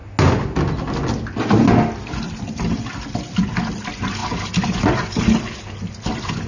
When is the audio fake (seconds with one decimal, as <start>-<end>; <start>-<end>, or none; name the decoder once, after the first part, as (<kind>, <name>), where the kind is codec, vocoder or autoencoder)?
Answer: none